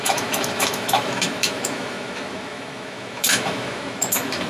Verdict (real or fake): fake